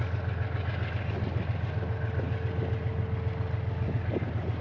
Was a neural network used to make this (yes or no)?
no